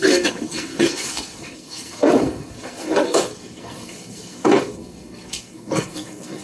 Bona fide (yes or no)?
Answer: no